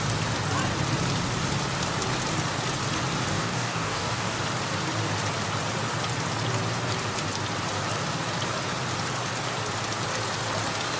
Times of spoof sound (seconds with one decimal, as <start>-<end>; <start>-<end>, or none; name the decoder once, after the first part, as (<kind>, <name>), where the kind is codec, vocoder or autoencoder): 3.3-4.4 (codec, DAC)